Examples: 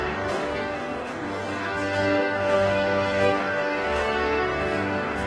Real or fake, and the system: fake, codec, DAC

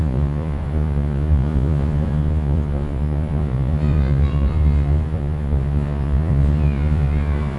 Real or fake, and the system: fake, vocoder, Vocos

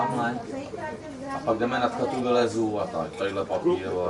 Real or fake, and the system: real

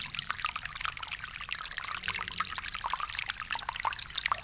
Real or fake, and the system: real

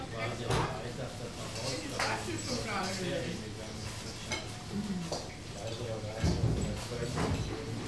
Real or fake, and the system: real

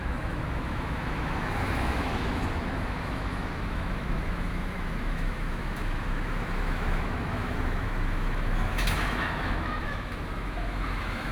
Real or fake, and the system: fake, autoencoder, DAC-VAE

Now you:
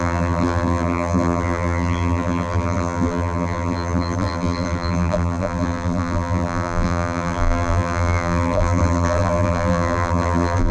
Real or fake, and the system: fake, vocoder, BigVGAN v2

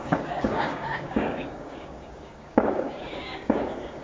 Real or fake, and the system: fake, codec, DAC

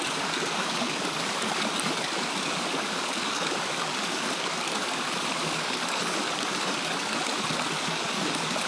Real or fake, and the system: fake, codec, DAC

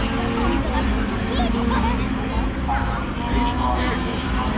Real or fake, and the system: real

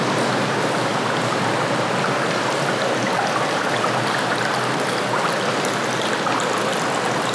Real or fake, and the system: real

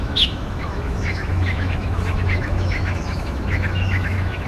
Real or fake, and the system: fake, autoencoder, DAC-VAE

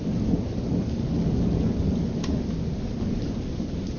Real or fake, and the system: real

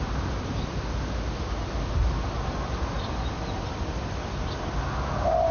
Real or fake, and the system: real